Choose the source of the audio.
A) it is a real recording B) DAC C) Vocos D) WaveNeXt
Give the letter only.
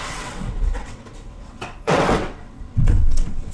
D